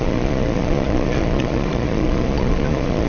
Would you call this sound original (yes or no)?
no